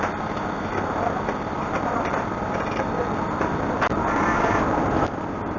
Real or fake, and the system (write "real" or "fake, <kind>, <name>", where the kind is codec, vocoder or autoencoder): fake, vocoder, BigVGAN v2